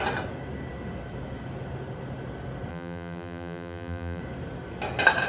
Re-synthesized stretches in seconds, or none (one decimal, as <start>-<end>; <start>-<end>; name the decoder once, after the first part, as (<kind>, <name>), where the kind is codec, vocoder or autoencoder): 2.7-4.2 (vocoder, BigVGAN v2)